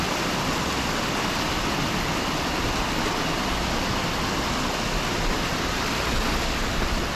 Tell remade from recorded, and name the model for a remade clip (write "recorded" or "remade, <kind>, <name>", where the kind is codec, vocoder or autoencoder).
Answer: recorded